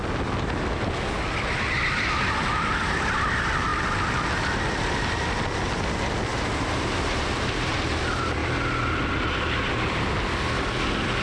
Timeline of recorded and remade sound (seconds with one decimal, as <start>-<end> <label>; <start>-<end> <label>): 0.0-6.3 recorded; 6.3-8.0 remade; 8.0-11.2 recorded